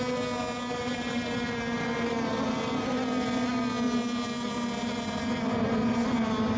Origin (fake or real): real